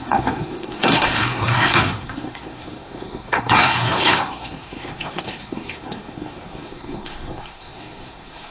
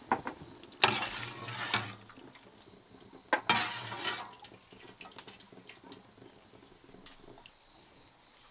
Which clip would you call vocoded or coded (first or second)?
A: first